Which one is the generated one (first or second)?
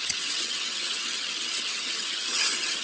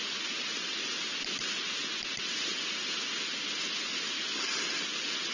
first